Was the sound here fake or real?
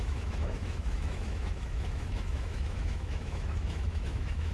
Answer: fake